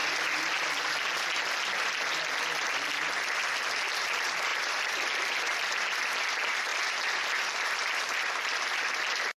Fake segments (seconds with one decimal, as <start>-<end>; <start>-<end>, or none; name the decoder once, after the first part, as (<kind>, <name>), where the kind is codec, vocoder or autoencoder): 4.5-5.2 (vocoder, BigVGAN v2)